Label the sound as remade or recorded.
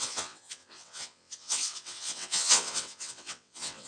remade